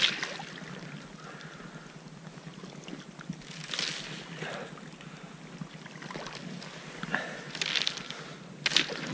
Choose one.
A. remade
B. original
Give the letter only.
B